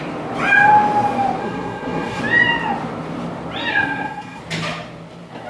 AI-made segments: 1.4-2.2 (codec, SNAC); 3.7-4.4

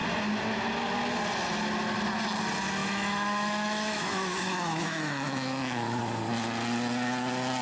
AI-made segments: 2.8-6.0 (autoencoder, DAC-VAE)

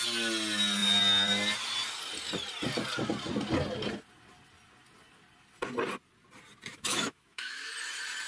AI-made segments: 6.7-7.7 (autoencoder, DAC-VAE)